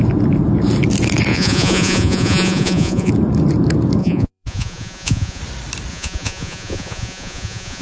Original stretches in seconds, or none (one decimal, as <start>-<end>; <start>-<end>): 0.0-1.3; 3.1-4.0; 5.4-5.9